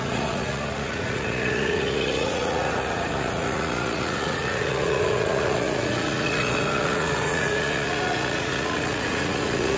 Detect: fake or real fake